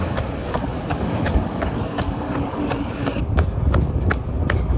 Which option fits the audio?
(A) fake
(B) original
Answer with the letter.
A